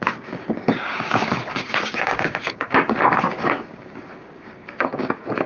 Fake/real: fake